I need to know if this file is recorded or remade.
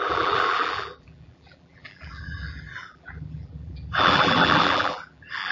remade